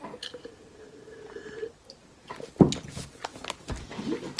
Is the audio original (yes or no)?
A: yes